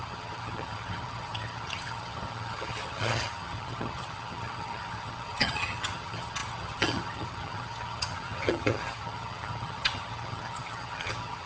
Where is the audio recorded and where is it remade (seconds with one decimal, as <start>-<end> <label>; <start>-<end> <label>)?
0.0-11.5 remade